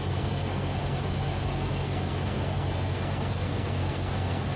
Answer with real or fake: fake